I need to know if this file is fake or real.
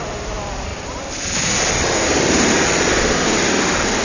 real